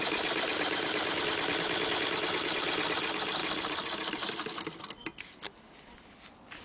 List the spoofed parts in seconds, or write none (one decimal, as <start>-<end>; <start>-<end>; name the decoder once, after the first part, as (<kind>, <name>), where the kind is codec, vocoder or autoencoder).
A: none